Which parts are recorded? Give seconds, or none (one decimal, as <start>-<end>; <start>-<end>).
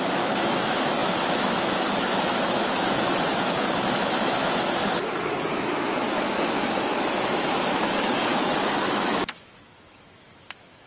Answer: none